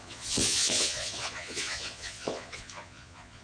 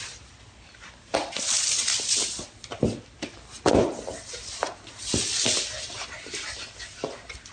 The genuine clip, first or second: second